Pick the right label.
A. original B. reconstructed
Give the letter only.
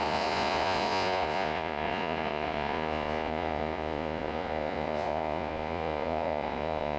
B